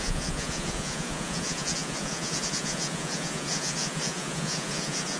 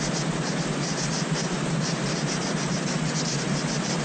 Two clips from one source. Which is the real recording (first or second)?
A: second